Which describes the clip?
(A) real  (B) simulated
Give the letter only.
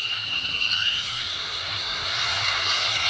B